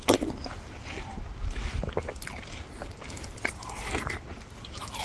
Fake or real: real